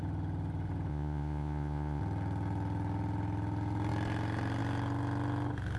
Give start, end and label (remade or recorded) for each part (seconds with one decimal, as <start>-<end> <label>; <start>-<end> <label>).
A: 0.0-0.9 recorded; 0.9-2.0 remade; 2.0-5.8 recorded